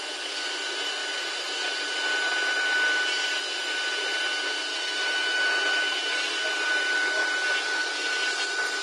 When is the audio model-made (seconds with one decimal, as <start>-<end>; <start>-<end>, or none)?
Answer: 4.7-5.8

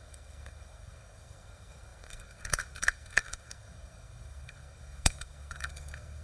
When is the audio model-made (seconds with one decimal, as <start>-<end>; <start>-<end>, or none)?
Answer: 0.0-6.2

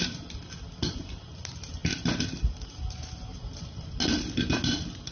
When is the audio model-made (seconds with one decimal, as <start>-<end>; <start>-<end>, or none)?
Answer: none

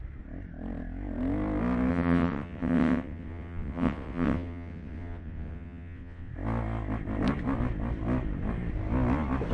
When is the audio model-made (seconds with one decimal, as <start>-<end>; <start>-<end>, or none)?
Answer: 1.9-6.3